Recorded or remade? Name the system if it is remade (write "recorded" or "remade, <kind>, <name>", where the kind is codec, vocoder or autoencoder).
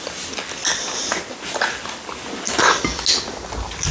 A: recorded